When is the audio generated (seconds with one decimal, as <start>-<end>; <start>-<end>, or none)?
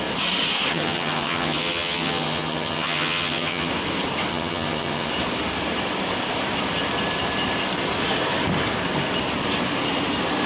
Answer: 0.7-3.7; 4.3-5.1